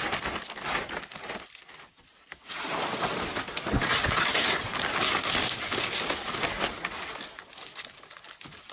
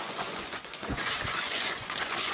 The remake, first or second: second